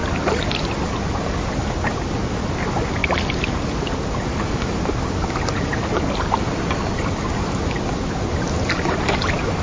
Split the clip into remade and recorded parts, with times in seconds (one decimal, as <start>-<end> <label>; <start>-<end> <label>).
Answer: 0.0-9.6 recorded